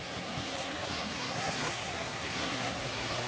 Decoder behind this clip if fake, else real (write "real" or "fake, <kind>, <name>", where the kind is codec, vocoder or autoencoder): fake, codec, SNAC